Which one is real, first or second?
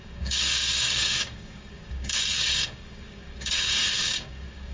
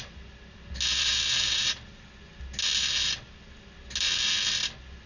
second